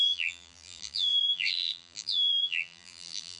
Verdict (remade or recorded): remade